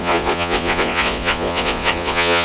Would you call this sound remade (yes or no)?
yes